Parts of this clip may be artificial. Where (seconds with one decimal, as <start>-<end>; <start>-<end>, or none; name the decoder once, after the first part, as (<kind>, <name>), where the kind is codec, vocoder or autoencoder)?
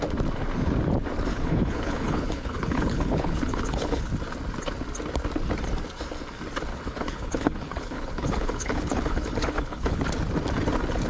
1.3-4.1 (codec, HILCodec); 6.7-10.0